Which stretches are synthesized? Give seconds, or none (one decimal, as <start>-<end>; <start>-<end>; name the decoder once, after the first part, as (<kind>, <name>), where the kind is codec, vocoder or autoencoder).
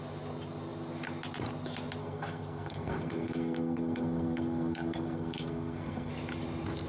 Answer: 2.0-6.1 (codec, SNAC)